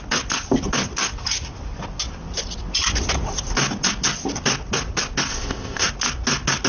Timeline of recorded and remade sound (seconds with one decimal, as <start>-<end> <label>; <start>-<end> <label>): 0.0-5.3 recorded; 5.3-5.9 remade; 5.9-6.7 recorded